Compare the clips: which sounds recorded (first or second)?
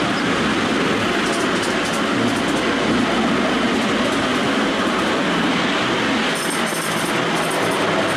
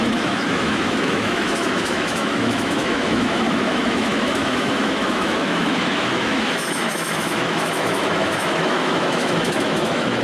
first